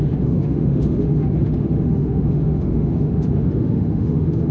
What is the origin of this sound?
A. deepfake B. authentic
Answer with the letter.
A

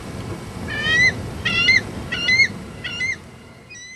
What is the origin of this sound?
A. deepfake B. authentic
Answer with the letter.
B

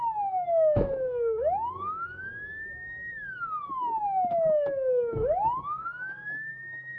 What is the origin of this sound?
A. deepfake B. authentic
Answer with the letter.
A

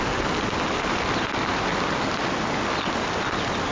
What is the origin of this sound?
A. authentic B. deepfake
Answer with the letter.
A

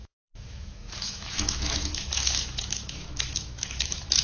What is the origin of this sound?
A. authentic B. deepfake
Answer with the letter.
B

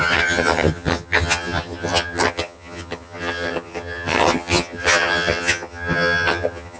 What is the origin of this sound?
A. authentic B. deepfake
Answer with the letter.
B